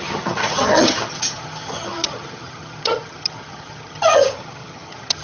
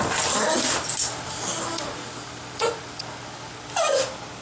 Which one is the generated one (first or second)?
first